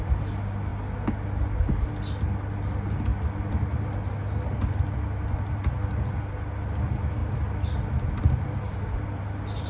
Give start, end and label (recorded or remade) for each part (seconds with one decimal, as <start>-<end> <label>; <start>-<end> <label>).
0.0-9.7 recorded